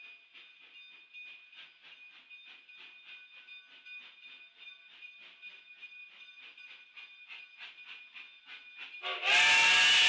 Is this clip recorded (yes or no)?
yes